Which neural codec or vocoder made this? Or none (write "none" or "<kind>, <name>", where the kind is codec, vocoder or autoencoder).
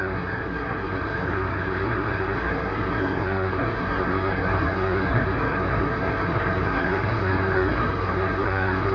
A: codec, SNAC